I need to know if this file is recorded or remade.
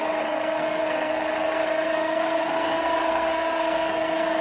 remade